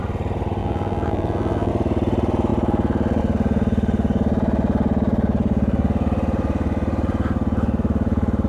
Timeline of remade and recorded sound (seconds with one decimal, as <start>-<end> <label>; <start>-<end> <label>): 0.0-0.6 recorded; 0.6-1.7 remade; 1.7-8.5 recorded